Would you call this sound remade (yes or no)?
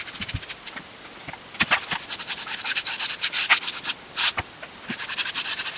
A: no